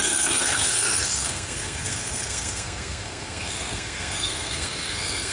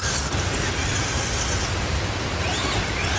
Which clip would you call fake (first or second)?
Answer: first